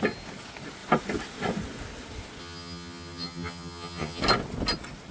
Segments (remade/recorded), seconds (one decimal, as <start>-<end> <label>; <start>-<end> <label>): 0.0-2.4 recorded; 2.4-4.2 remade; 4.2-5.1 recorded